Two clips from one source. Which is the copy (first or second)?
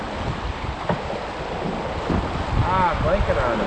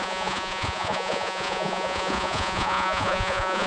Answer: second